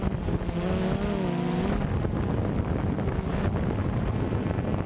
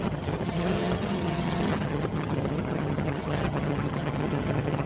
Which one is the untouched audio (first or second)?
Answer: first